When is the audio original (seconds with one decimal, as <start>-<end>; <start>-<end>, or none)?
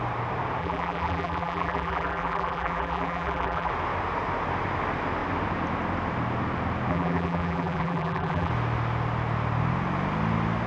0.0-0.6; 3.7-6.9; 8.5-10.7